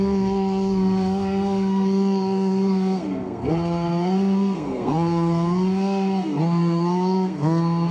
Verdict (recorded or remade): remade